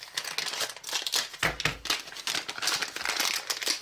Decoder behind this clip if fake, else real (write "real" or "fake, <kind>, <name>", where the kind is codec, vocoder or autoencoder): real